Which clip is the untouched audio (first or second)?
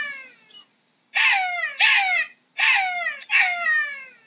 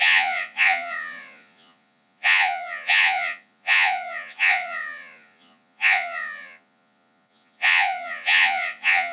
first